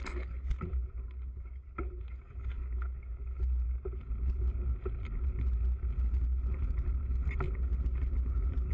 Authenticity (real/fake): real